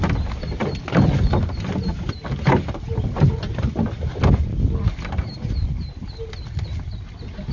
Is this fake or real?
real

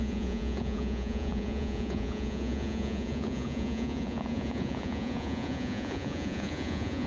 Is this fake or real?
fake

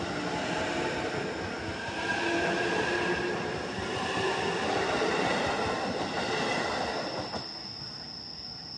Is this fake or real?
real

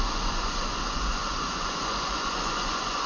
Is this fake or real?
fake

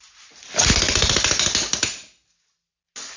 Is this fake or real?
real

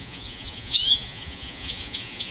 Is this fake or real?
fake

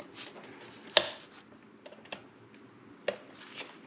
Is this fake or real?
real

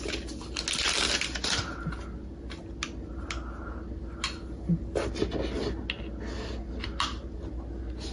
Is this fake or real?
real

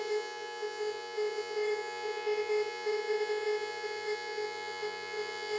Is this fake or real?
fake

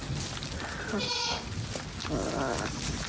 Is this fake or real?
real